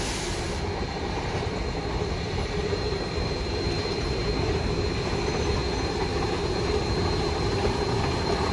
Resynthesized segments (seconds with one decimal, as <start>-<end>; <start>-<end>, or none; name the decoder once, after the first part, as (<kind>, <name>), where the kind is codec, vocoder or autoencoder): 0.0-8.5 (vocoder, BigVGAN v2)